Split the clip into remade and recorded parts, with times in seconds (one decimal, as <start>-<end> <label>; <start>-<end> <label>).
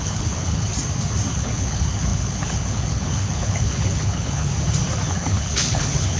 0.0-0.7 remade; 0.7-1.3 recorded; 1.3-4.5 remade; 4.5-5.1 recorded; 5.1-6.2 remade